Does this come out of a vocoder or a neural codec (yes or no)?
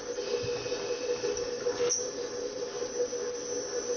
no